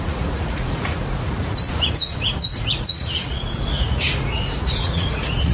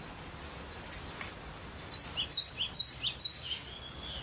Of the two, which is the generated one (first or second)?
first